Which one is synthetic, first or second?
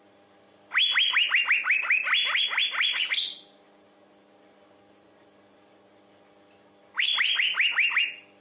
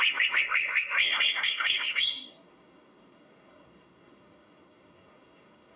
second